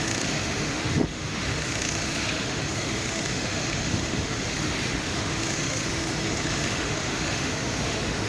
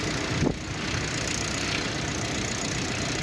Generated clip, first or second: first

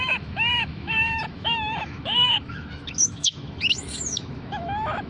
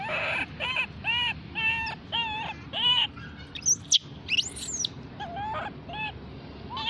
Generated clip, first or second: first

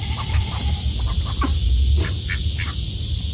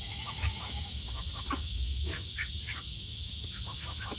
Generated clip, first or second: second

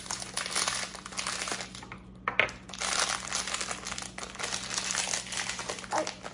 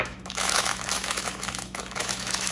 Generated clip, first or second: second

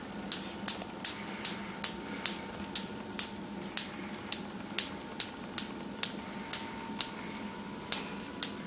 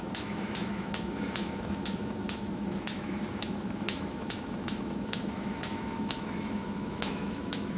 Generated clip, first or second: second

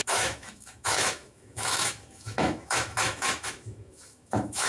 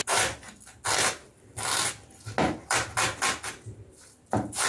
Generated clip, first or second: first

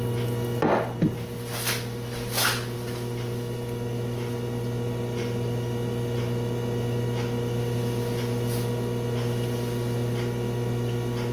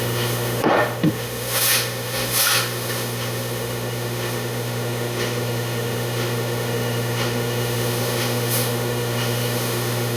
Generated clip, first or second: second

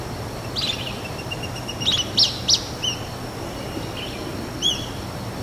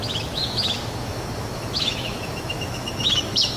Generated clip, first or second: second